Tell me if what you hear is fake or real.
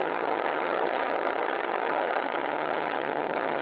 fake